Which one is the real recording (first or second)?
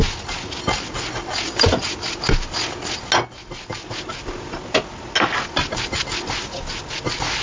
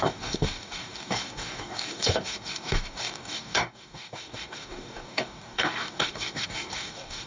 first